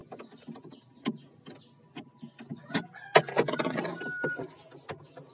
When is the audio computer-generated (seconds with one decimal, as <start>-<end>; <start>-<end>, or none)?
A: 3.2-3.9